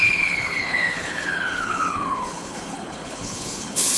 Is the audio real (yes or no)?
no